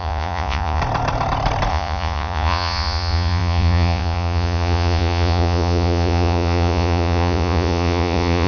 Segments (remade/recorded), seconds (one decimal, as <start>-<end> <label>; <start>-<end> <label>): 0.0-0.8 remade; 0.8-1.7 recorded; 1.7-8.5 remade